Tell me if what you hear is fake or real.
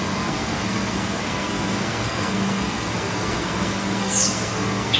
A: fake